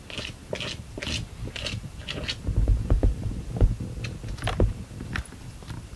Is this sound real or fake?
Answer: real